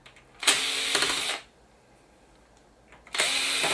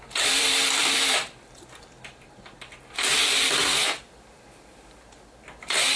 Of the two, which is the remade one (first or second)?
second